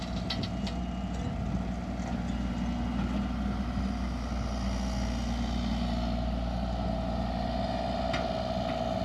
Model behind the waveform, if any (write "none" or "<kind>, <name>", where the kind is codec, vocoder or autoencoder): none